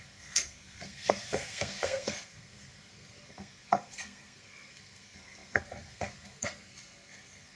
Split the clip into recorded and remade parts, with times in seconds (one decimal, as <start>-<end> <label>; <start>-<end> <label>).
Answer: 0.0-7.6 remade